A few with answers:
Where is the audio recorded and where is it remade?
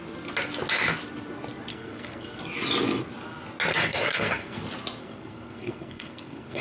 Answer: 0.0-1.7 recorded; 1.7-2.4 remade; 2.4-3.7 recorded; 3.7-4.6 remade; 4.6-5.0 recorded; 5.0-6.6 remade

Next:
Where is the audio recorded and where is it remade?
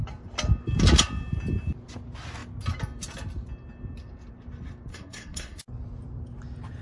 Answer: 0.0-4.9 recorded; 4.9-5.6 remade; 5.6-6.8 recorded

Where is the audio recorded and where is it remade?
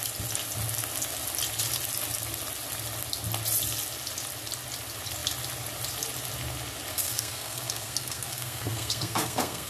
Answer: 0.0-6.9 recorded; 6.9-9.7 remade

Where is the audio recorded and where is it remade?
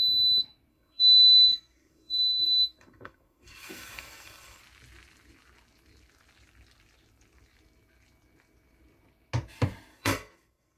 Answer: 0.0-0.7 recorded; 0.7-4.6 remade; 4.6-9.9 recorded; 9.9-10.8 remade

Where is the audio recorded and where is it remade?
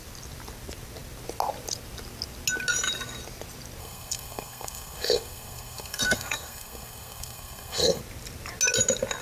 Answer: 0.0-3.8 recorded; 3.8-8.0 remade; 8.0-9.2 recorded